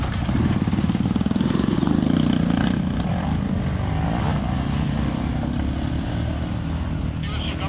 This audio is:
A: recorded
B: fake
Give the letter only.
A